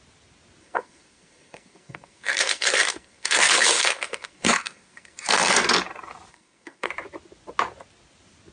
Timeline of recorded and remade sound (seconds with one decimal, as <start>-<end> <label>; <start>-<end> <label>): 0.0-0.6 recorded; 0.6-5.7 remade; 5.7-6.3 recorded; 6.3-6.9 remade; 6.9-8.5 recorded